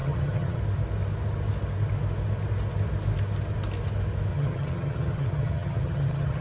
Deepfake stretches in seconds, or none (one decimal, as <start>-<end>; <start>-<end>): 0.0-0.6; 4.3-6.4